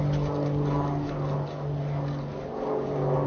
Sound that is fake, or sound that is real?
real